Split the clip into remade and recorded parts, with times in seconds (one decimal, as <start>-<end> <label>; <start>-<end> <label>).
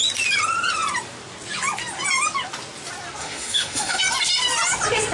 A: 0.0-3.2 recorded; 3.2-4.0 remade; 4.0-5.1 recorded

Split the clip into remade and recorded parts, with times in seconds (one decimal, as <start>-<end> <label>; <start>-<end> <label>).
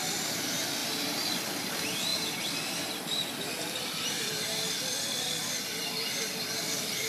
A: 0.0-7.1 recorded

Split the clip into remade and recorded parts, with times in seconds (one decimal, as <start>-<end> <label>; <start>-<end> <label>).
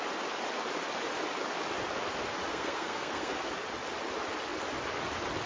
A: 0.0-2.5 recorded; 2.5-3.5 remade; 3.5-5.5 recorded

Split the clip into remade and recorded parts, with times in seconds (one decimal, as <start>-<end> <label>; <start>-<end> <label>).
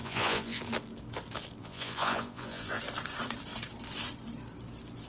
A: 0.0-0.6 remade; 0.6-1.6 recorded; 1.6-2.8 remade; 2.8-5.1 recorded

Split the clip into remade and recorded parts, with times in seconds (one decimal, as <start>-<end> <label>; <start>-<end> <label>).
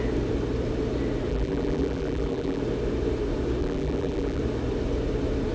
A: 0.0-1.3 recorded; 1.3-2.6 remade; 2.6-3.6 recorded; 3.6-4.4 remade; 4.4-5.5 recorded